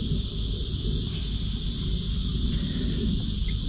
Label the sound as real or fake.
real